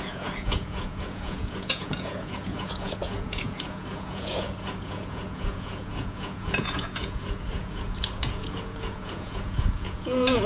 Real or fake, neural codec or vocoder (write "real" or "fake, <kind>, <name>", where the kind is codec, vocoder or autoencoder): fake, vocoder, Vocos